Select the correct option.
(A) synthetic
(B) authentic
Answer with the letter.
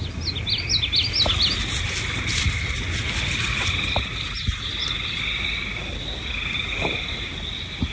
B